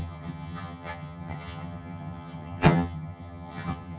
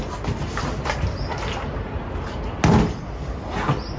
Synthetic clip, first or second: first